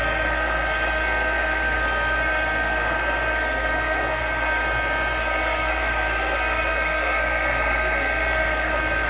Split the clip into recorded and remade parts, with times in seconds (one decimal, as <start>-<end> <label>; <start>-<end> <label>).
0.0-4.6 remade; 4.6-5.2 recorded; 5.2-9.1 remade